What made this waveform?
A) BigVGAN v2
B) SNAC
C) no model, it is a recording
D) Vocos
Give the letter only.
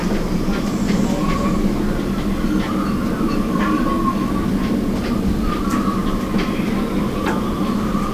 C